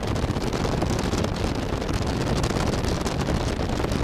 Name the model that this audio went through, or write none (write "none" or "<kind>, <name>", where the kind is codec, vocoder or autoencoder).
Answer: none